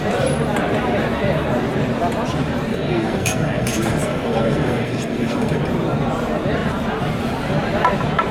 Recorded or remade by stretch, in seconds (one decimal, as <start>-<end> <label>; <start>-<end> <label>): 0.0-2.7 recorded; 2.7-5.6 remade; 5.6-8.3 recorded